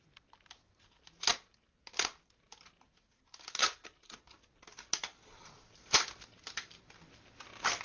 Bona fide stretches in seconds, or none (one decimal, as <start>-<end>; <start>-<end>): 0.0-7.8

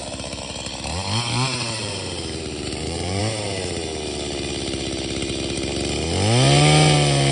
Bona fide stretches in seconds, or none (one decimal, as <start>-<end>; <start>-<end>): 0.5-1.8; 3.2-7.3

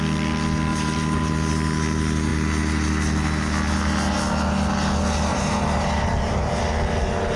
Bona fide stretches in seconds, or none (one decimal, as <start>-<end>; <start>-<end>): 0.0-0.7; 1.3-5.3; 6.6-7.4

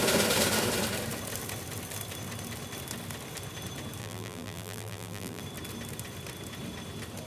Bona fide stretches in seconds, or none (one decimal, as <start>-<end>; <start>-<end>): 0.0-4.0; 5.4-7.3